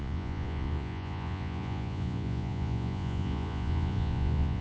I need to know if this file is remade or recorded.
remade